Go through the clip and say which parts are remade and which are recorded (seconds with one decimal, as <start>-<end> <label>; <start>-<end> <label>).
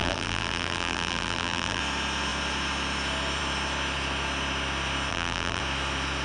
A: 0.0-1.8 remade; 1.8-5.1 recorded; 5.1-5.6 remade; 5.6-6.2 recorded